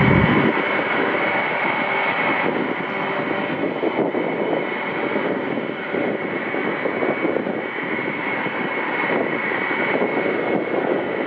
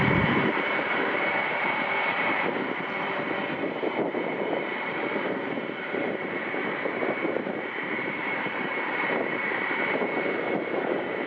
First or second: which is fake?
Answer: second